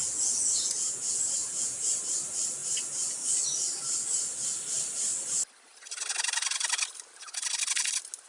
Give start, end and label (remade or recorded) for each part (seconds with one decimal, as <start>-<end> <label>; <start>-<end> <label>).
0.0-1.0 remade; 1.0-1.4 recorded; 1.4-2.0 remade; 2.0-8.3 recorded